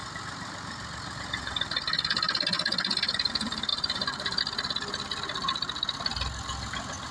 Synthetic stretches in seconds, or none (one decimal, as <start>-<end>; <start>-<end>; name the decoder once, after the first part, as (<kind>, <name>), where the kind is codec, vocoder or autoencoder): 3.7-4.4 (vocoder, BigVGAN v2)